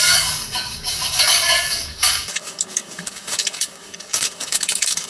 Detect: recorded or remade remade